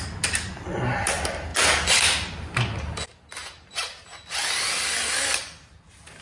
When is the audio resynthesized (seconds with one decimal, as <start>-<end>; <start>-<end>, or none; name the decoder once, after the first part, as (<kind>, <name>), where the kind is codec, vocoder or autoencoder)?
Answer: none